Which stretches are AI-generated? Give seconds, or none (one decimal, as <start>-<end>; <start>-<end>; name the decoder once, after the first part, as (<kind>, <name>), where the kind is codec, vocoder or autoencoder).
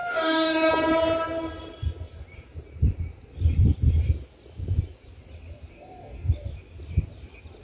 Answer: 0.0-0.7 (codec, DAC); 5.7-6.3